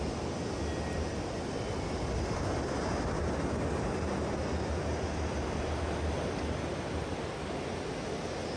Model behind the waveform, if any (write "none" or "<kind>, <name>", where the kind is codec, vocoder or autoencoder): none